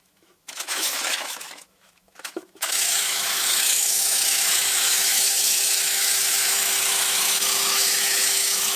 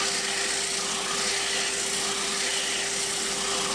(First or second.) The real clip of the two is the second